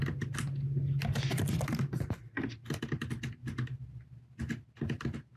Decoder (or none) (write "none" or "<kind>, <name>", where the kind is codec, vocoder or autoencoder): none